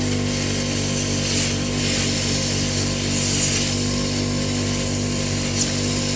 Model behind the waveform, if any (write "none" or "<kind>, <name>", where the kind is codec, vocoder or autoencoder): none